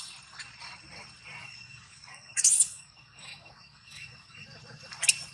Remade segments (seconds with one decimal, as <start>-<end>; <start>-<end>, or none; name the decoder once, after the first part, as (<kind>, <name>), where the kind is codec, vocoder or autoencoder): 1.4-4.6 (codec, DAC)

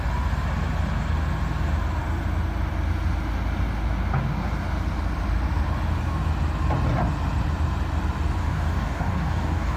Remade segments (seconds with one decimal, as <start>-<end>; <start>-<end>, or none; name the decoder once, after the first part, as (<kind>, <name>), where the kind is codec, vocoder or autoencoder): 8.4-9.8 (codec, DAC)

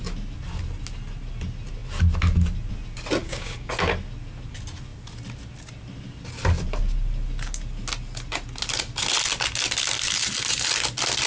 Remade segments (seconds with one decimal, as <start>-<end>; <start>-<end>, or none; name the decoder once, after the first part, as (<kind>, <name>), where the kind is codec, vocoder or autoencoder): 3.2-3.7 (codec, DAC)

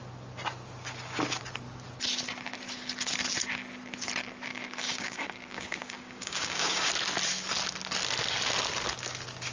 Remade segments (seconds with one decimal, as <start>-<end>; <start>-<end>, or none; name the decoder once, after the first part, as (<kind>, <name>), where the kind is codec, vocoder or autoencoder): 4.5-6.9 (codec, DAC)

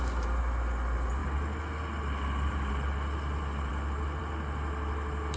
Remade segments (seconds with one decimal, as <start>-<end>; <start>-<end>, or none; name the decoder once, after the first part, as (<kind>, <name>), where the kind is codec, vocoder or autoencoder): none

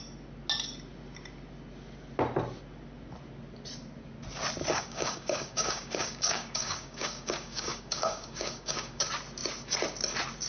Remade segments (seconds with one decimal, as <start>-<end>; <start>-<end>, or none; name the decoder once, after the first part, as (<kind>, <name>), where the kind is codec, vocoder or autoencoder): 4.7-9.0 (codec, DAC)